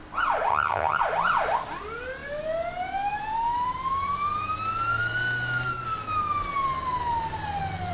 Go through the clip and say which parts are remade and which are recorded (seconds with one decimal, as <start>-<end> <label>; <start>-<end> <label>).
0.0-0.5 recorded; 0.5-1.0 remade; 1.0-7.9 recorded